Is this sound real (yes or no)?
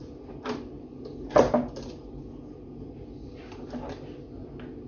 yes